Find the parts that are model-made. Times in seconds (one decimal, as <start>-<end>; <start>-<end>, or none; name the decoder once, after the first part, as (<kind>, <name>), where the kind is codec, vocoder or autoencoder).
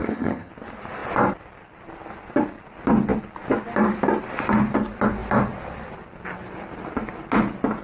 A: 0.0-0.5 (vocoder, HiFi-GAN)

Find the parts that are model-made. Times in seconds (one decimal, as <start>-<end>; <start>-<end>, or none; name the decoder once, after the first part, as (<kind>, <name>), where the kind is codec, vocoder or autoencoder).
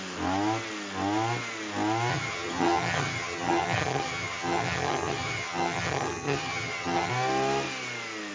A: 2.1-7.1 (vocoder, HiFi-GAN)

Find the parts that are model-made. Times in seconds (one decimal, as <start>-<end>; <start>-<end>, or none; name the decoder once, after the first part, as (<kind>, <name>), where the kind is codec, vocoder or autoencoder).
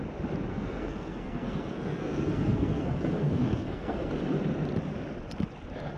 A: 0.5-4.1 (codec, SNAC)